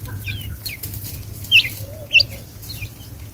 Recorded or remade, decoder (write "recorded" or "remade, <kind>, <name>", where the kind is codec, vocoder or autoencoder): recorded